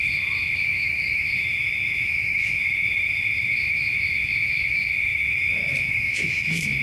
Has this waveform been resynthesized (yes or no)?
yes